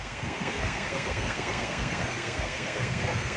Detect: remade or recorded remade